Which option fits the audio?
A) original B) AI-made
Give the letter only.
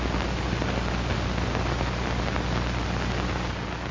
A